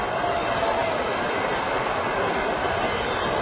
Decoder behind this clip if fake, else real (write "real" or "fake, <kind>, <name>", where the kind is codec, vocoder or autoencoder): real